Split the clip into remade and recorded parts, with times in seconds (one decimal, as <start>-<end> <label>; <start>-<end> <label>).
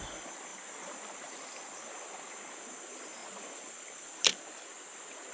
0.0-5.3 recorded